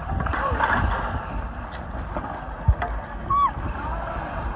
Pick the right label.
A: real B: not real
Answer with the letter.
A